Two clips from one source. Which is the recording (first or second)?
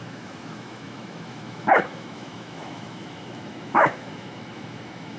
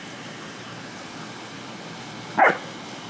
second